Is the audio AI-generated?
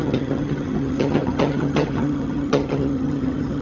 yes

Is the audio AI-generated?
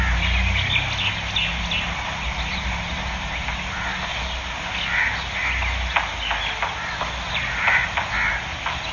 no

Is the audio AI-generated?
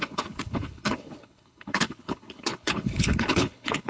yes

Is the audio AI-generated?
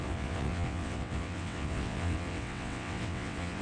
yes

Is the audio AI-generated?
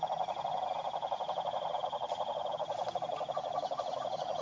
no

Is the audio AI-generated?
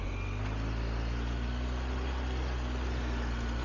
no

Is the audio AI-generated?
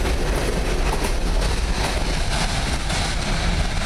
no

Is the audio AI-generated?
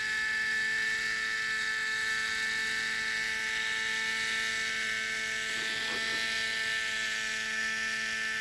no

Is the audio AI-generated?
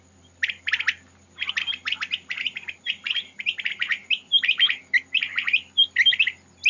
no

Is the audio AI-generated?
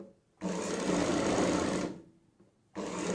no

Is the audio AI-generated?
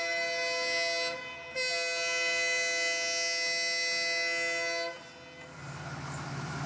no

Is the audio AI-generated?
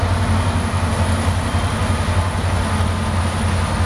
no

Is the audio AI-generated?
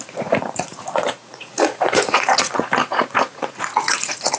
yes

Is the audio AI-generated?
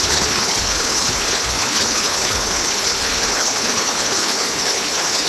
yes